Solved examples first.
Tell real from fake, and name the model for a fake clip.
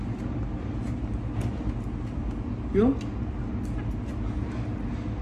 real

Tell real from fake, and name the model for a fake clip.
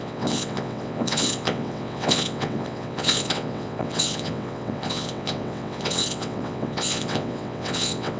fake, vocoder, WaveNeXt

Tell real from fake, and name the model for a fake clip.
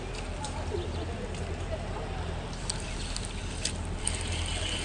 real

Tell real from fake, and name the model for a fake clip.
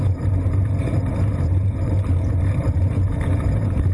fake, vocoder, BigVGAN v2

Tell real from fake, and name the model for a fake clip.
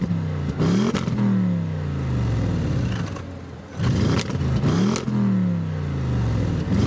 real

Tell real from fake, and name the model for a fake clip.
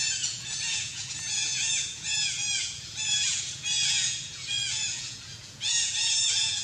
fake, vocoder, Vocos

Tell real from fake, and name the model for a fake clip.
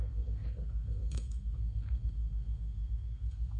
fake, codec, SNAC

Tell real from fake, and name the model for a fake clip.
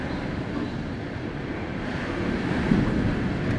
fake, vocoder, BigVGAN v2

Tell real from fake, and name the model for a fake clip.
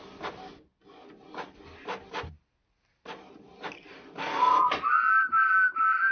real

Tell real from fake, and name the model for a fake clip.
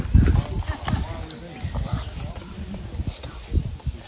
real